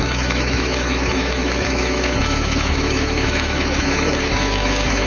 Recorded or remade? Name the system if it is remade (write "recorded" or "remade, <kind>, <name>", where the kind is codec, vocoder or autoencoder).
remade, autoencoder, DAC-VAE